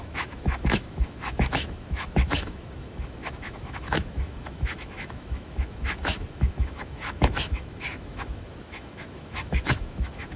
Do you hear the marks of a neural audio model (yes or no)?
yes